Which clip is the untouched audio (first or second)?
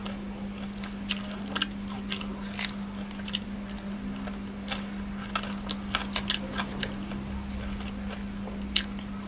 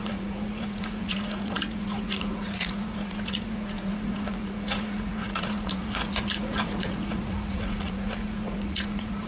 first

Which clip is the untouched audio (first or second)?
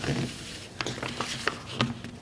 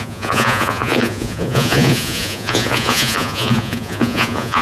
first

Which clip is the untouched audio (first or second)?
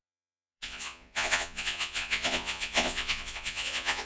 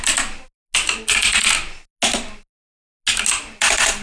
second